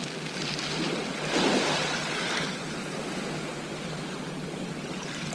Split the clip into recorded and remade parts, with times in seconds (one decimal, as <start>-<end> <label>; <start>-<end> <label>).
0.0-5.3 recorded